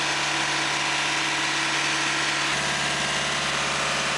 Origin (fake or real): real